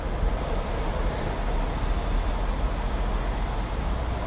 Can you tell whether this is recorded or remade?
recorded